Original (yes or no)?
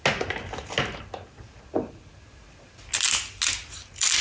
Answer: yes